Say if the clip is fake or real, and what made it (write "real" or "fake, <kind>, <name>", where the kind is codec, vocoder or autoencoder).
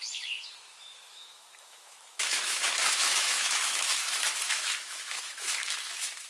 fake, autoencoder, DAC-VAE